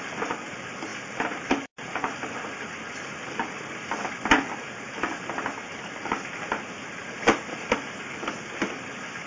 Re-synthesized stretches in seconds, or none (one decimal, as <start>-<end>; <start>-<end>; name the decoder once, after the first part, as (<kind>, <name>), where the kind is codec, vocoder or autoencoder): 0.0-0.9 (vocoder, BigVGAN v2); 5.6-9.3